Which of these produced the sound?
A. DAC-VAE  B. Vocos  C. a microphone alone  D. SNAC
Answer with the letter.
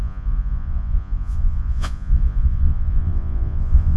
B